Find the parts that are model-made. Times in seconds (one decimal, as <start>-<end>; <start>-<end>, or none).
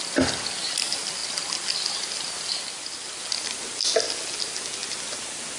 none